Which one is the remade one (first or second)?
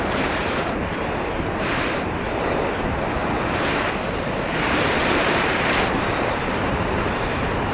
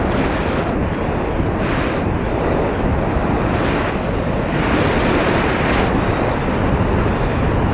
first